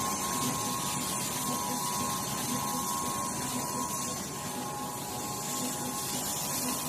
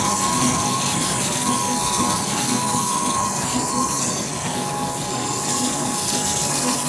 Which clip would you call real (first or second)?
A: first